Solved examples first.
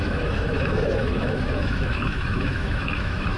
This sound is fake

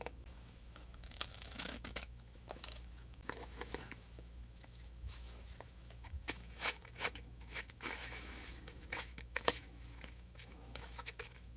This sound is fake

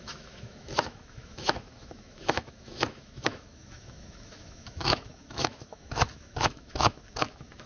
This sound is fake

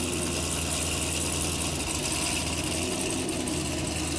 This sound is real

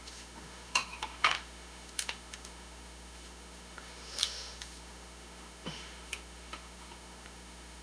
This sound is fake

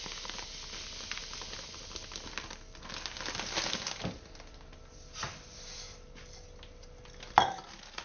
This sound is real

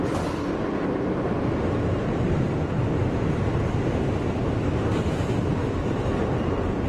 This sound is real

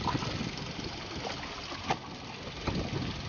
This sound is real